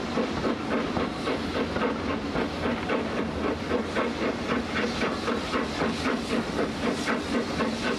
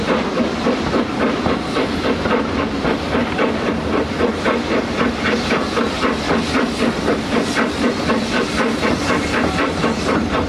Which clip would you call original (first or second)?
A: first